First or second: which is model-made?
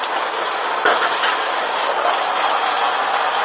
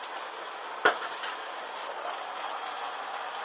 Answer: second